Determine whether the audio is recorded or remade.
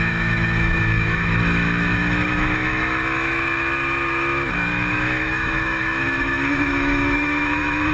remade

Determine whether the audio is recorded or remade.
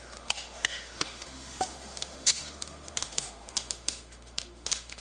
remade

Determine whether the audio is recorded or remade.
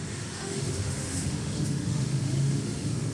remade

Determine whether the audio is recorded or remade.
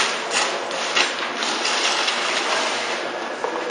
recorded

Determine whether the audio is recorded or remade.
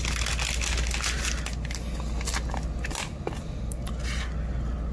recorded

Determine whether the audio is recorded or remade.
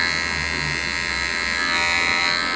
recorded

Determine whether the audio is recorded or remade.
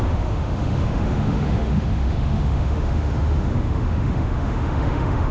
remade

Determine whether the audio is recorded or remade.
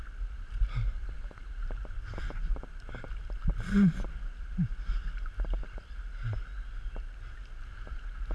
recorded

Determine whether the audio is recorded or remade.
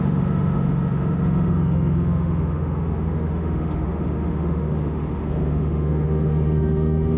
remade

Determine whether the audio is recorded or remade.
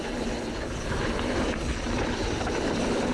recorded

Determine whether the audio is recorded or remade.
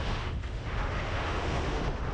remade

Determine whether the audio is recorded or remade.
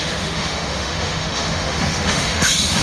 remade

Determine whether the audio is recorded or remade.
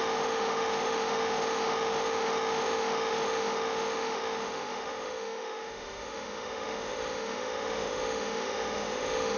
remade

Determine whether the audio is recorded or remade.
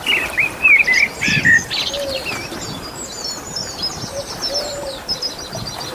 recorded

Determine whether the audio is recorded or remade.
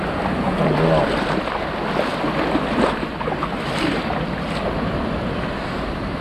recorded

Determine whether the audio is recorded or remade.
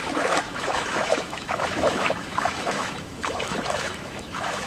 remade